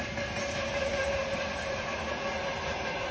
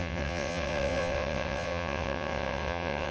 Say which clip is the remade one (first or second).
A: second